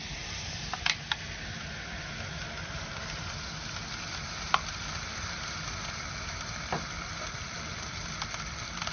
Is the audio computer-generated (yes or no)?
no